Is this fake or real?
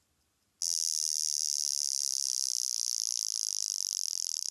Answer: real